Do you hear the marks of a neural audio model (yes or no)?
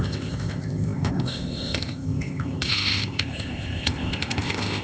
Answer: yes